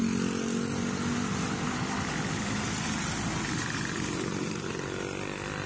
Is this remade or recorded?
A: recorded